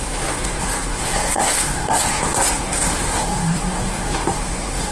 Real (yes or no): no